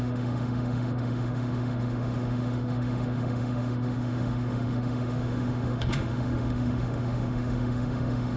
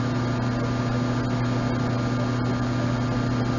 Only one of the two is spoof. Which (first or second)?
first